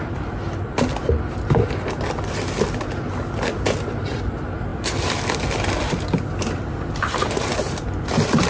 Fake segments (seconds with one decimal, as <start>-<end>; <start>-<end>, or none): none